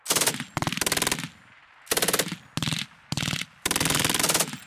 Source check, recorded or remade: recorded